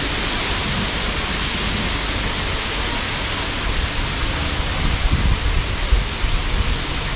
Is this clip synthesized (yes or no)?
no